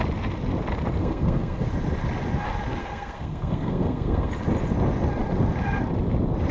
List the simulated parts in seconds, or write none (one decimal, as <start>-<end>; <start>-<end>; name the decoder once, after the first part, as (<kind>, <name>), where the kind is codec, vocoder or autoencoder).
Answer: 1.0-1.7 (codec, SNAC); 2.8-4.3